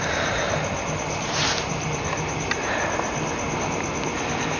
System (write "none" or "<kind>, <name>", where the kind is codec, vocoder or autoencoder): none